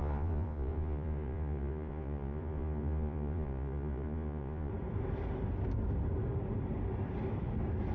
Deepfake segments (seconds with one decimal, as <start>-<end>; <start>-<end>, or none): 0.0-4.7